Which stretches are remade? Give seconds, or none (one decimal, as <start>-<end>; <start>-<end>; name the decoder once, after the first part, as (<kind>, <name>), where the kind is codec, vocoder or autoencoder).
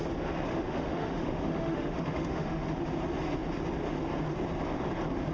0.5-2.7 (autoencoder, DAC-VAE)